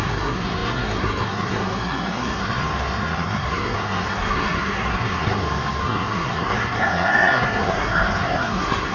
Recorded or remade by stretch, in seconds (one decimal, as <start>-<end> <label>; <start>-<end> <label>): 0.0-8.9 remade